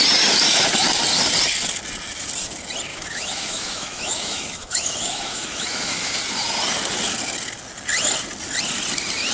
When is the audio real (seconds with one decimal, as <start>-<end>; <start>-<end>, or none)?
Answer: 0.0-2.9; 6.1-9.3